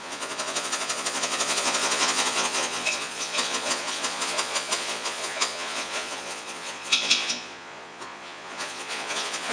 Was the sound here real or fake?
fake